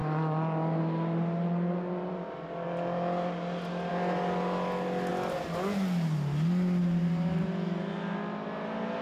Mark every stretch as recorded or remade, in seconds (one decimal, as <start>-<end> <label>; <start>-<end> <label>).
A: 0.0-9.0 recorded